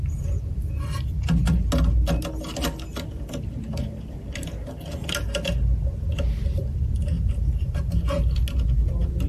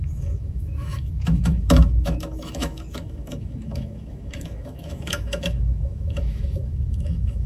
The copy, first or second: second